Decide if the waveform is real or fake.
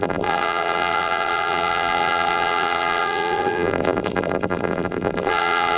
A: fake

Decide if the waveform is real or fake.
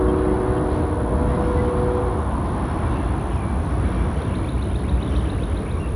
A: real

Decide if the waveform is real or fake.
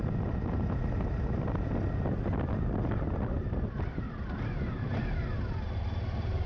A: real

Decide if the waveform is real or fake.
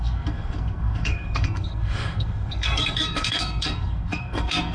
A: fake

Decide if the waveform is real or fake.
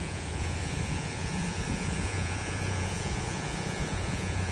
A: fake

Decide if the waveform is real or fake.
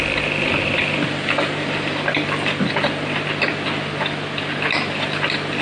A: real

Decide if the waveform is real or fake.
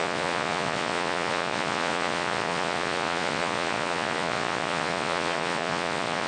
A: fake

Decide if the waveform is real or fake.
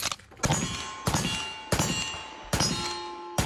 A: real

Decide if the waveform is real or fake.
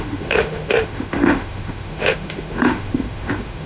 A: fake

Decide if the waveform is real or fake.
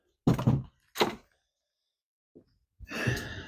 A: real